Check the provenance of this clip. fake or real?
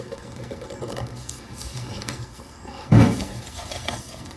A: fake